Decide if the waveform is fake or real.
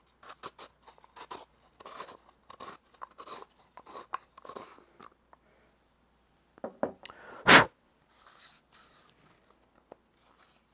real